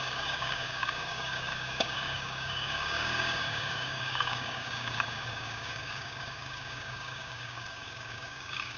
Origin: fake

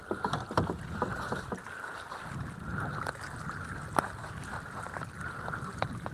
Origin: real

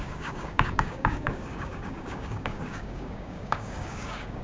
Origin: fake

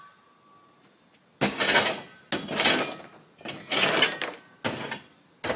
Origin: real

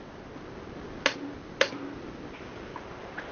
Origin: real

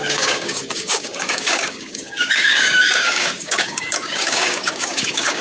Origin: fake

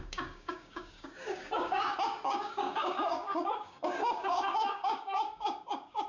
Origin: fake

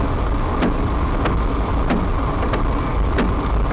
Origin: real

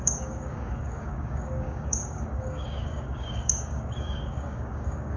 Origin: fake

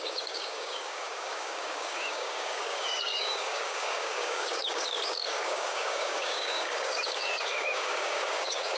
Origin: fake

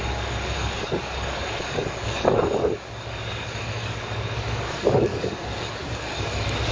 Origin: fake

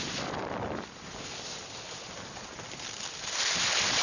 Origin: real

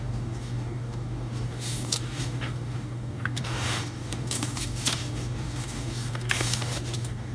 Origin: fake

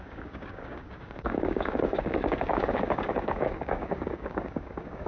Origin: fake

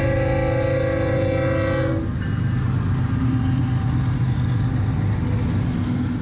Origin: real